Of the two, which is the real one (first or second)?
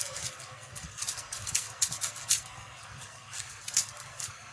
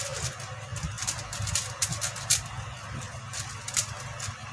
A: second